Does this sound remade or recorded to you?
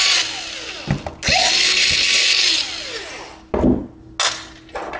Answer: recorded